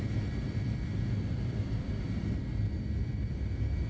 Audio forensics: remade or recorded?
remade